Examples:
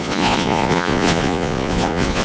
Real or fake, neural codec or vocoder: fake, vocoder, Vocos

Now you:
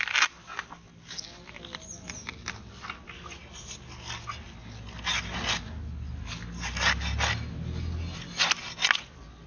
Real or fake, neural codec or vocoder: real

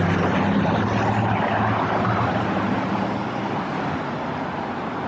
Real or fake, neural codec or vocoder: real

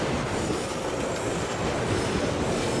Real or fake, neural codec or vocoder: real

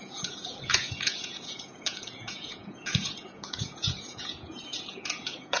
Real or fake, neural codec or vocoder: fake, vocoder, Vocos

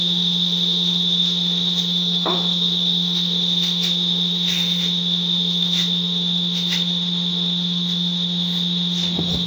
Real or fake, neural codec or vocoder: fake, autoencoder, DAC-VAE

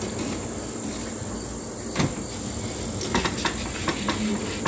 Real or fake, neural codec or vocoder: real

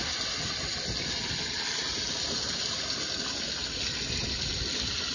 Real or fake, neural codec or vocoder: real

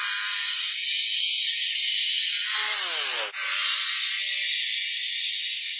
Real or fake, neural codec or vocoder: real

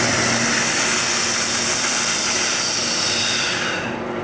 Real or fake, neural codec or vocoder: real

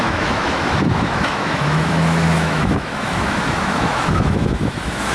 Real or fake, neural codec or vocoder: fake, autoencoder, DAC-VAE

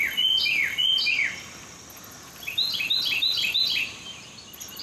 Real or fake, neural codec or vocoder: real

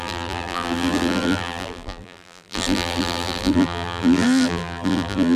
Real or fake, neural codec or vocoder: fake, vocoder, BigVGAN v2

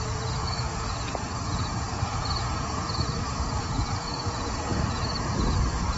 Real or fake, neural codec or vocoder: fake, vocoder, Vocos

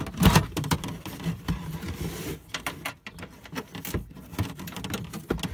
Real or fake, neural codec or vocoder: real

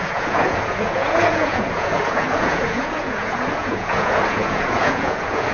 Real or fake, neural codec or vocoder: fake, vocoder, Vocos